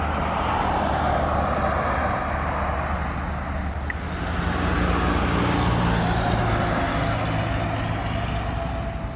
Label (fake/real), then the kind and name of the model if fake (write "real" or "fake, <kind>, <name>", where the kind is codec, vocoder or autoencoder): real